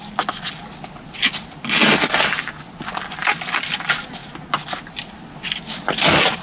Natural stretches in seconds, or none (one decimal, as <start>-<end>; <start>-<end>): 0.0-6.4

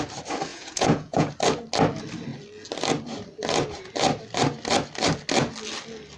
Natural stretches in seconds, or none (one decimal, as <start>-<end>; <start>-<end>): 0.0-0.5; 1.3-6.2